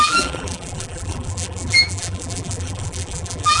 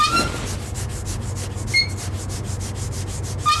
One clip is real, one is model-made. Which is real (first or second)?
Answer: second